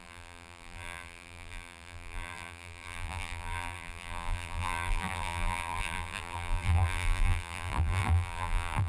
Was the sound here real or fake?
fake